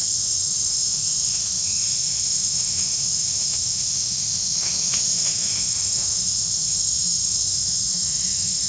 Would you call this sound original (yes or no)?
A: no